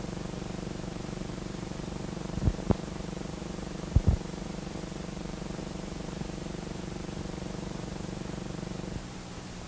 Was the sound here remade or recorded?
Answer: remade